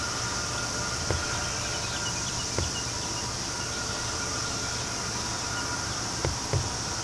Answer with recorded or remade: recorded